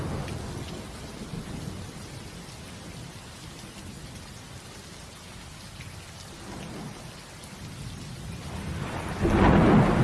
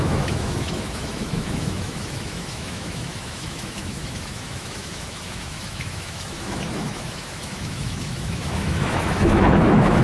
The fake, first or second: second